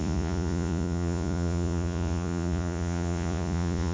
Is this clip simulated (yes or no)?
yes